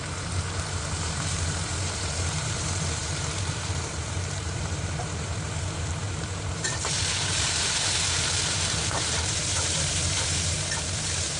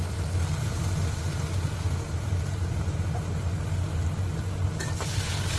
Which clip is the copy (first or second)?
first